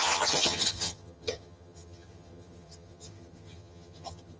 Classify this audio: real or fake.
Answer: fake